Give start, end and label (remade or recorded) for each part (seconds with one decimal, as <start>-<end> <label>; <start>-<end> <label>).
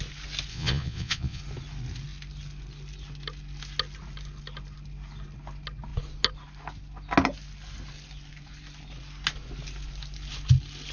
0.0-0.5 recorded; 0.5-1.4 remade; 1.4-10.9 recorded